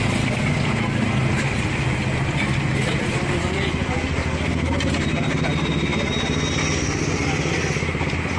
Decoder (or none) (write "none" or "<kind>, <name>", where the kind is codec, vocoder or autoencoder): none